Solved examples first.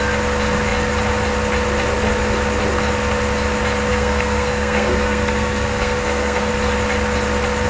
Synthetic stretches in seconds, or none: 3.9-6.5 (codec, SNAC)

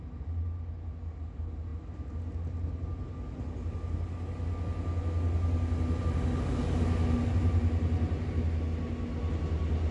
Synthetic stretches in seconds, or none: none

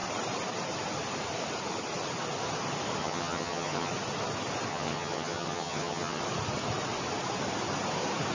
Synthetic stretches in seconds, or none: 3.0-3.9 (vocoder, HiFi-GAN); 4.7-6.2

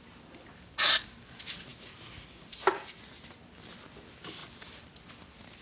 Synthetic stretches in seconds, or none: none

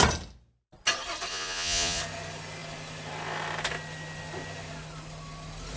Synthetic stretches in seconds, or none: 1.3-2.0 (vocoder, Vocos)